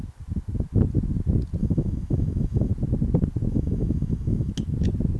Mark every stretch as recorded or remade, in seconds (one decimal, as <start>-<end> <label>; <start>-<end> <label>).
0.0-1.6 recorded; 1.6-2.7 remade; 2.7-3.5 recorded; 3.5-4.5 remade; 4.5-5.2 recorded